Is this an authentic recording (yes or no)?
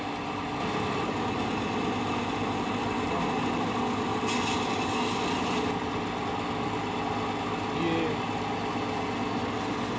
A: yes